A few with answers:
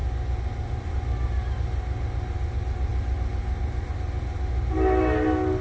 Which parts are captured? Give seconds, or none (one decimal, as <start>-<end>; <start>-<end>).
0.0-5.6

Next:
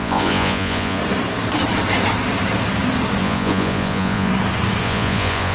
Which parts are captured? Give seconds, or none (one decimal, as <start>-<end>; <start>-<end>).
1.0-3.2; 4.3-4.8

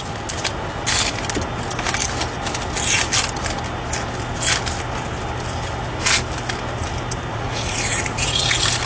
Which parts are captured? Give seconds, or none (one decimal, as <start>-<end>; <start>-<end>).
0.0-7.3; 8.4-8.9

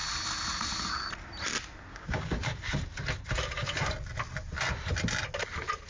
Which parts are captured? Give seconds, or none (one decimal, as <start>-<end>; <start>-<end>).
0.0-1.9; 2.3-5.9